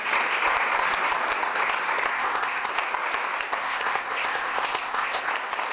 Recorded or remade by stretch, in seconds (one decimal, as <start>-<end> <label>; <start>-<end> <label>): 0.0-2.1 recorded; 2.1-2.7 remade; 2.7-3.6 recorded; 3.6-5.3 remade; 5.3-5.7 recorded